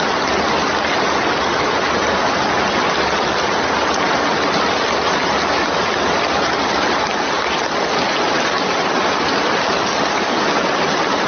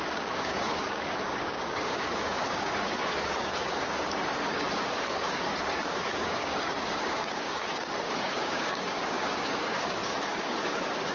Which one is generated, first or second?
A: second